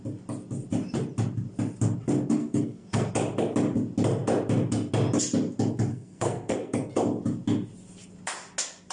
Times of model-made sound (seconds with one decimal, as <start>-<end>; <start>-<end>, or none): 2.4-3.1; 5.9-6.9